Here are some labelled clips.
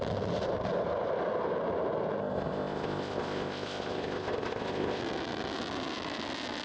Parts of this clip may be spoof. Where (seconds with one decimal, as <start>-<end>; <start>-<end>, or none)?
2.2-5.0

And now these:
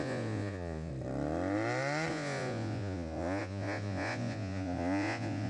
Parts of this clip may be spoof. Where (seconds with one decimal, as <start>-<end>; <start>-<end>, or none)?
0.0-0.9; 2.1-5.5

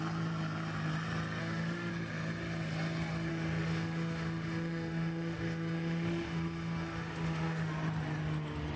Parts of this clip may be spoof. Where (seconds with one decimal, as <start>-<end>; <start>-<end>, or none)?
1.4-1.9; 3.3-7.7

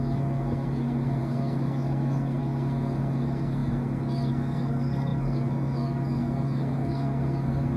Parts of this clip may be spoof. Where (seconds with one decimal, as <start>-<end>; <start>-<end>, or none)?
0.0-7.8

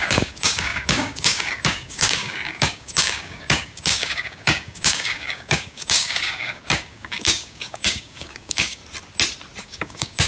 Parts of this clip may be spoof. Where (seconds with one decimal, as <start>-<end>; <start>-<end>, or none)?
0.0-8.8; 9.6-10.3

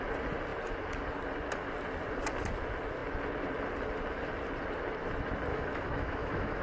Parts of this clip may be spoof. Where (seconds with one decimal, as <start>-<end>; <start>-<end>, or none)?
5.5-6.6

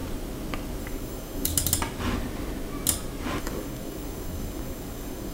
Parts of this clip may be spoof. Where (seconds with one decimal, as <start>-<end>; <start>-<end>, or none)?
0.8-1.5; 3.4-5.3

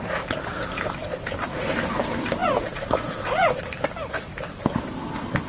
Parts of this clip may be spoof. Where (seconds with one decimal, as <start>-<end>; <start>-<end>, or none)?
2.4-3.6